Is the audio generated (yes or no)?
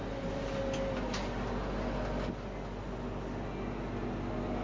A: no